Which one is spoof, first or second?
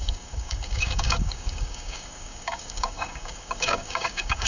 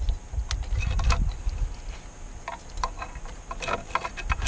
first